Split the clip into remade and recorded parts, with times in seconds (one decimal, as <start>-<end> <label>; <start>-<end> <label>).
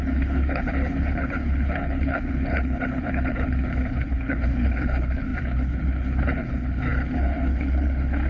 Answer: 0.0-8.3 remade